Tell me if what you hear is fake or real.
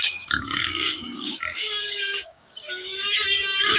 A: fake